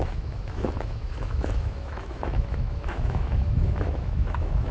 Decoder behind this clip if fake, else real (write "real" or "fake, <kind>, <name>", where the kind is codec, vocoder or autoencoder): fake, autoencoder, DAC-VAE